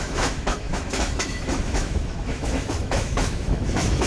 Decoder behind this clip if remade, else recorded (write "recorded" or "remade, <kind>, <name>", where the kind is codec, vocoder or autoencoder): remade, autoencoder, DAC-VAE